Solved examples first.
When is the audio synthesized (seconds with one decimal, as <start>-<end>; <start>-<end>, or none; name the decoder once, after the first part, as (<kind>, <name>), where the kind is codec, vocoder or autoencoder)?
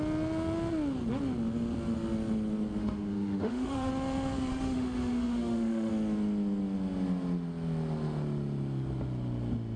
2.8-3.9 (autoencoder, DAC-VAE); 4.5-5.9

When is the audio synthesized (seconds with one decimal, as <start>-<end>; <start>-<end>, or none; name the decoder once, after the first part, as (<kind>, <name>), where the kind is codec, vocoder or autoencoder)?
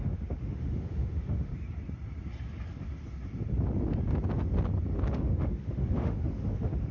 0.0-1.5 (autoencoder, DAC-VAE); 5.1-6.9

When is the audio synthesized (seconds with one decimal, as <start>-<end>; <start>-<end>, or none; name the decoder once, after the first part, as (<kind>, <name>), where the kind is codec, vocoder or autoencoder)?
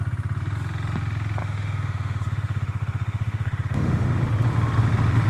1.4-4.2 (autoencoder, DAC-VAE)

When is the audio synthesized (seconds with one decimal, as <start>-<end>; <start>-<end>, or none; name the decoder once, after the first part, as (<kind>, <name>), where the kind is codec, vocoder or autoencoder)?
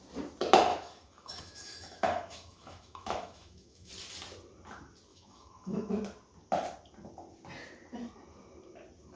0.7-3.9 (autoencoder, DAC-VAE); 5.1-5.9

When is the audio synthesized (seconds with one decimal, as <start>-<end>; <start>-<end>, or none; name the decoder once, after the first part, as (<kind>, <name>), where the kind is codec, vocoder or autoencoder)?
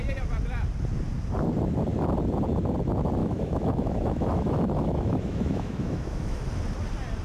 3.2-6.4 (autoencoder, DAC-VAE)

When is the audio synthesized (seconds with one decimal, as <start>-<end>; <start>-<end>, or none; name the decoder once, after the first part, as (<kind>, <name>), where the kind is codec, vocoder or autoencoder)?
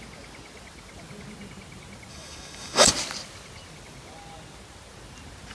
2.1-2.9 (autoencoder, DAC-VAE)